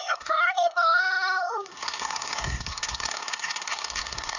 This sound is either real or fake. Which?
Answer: fake